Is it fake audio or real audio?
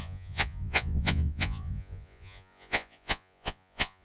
fake